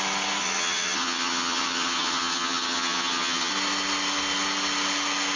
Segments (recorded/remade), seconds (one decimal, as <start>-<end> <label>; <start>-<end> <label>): 0.0-0.4 recorded; 0.4-3.5 remade; 3.5-5.4 recorded